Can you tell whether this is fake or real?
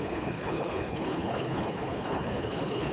fake